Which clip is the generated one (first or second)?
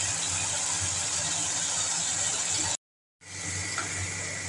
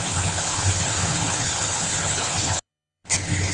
second